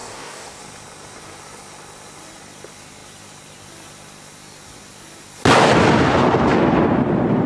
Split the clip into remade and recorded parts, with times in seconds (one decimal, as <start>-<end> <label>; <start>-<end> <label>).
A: 0.0-0.6 remade; 0.6-7.5 recorded